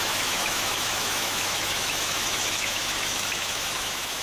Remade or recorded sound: remade